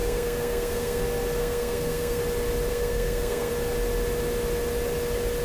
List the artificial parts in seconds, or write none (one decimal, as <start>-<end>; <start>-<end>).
0.0-1.0; 1.4-2.2; 2.7-3.5

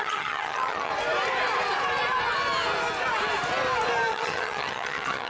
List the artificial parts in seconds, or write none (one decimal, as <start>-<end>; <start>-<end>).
0.0-0.9; 4.1-5.3

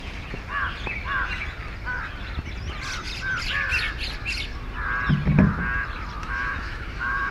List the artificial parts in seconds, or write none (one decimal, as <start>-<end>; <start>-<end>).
6.2-7.3

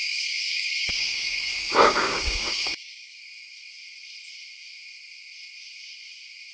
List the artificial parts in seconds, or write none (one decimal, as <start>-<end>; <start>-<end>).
0.0-3.2

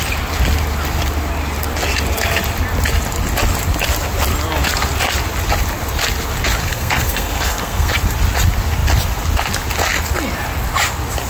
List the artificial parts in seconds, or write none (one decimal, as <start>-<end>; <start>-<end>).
6.6-7.9